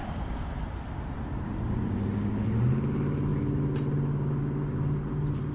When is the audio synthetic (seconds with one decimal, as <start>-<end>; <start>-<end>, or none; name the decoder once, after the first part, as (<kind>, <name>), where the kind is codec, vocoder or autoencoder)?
0.0-1.6 (vocoder, BigVGAN v2)